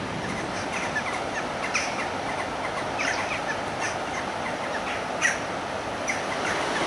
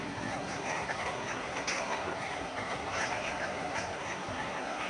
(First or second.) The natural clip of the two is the first